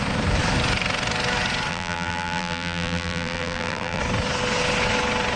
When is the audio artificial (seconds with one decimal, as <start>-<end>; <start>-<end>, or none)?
1.7-4.0